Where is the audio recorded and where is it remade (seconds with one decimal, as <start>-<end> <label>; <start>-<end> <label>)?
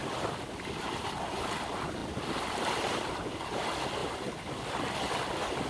0.0-4.0 recorded; 4.0-4.8 remade; 4.8-5.7 recorded